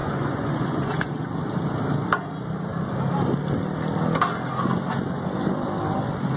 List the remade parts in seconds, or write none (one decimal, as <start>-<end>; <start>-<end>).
0.0-1.1